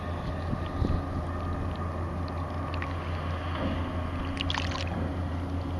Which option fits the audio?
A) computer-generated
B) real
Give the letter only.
B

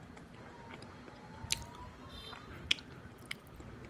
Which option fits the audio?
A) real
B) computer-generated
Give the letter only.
A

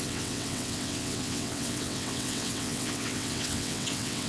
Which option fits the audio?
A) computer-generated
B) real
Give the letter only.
A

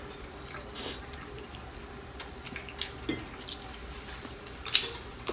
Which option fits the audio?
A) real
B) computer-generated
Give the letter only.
A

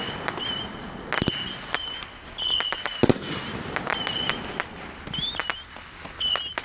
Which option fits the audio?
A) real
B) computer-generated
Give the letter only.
A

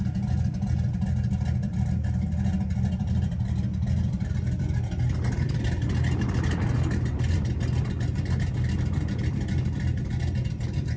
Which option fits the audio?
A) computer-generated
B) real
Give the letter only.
B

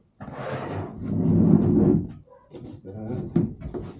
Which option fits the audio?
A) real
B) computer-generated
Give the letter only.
A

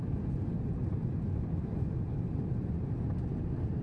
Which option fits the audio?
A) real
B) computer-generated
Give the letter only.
A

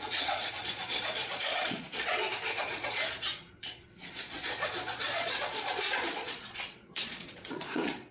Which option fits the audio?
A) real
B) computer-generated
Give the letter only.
B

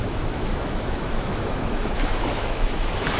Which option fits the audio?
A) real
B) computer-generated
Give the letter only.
B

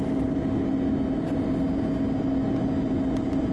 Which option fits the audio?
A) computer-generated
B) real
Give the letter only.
B